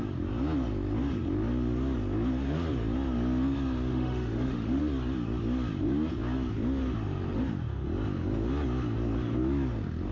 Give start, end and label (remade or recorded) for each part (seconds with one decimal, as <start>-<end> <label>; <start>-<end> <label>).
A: 0.0-3.9 recorded; 3.9-4.8 remade; 4.8-10.1 recorded